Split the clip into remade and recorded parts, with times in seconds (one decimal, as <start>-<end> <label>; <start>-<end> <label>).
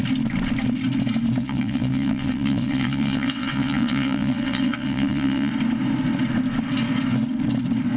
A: 0.0-1.4 recorded; 1.4-5.5 remade; 5.5-8.0 recorded